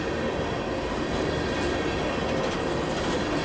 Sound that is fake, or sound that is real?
real